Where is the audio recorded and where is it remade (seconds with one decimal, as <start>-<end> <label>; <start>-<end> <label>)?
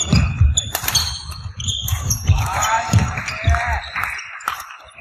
0.0-1.2 recorded; 1.2-3.2 remade; 3.2-5.0 recorded